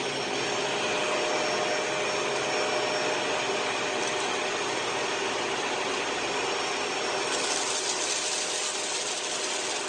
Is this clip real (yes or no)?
yes